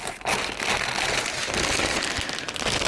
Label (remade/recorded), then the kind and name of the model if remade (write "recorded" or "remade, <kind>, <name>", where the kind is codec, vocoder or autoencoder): recorded